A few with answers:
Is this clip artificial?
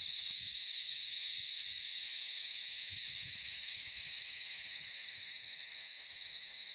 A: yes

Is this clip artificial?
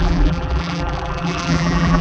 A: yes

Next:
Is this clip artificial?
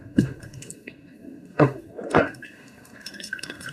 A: yes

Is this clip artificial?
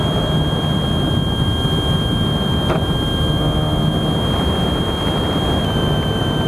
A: no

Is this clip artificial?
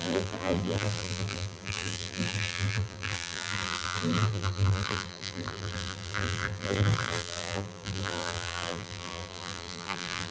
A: yes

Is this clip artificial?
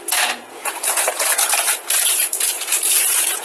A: yes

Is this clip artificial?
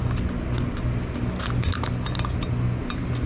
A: no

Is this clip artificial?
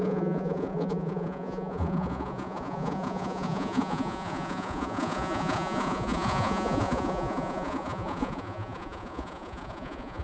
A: yes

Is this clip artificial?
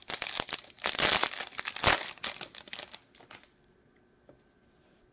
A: no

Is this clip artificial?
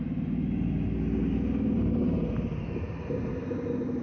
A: no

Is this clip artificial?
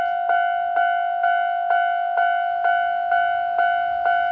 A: no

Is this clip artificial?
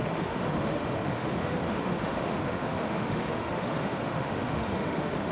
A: yes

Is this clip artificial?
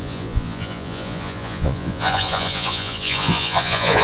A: yes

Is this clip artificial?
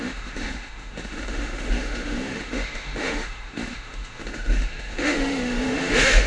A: yes